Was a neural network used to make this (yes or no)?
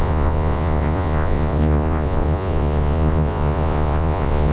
yes